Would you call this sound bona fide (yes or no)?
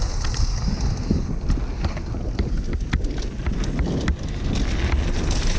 yes